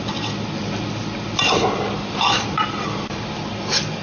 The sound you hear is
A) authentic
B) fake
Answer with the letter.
A